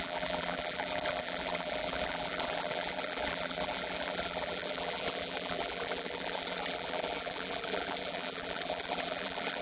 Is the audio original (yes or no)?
no